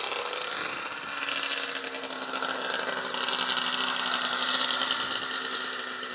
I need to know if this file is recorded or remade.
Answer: recorded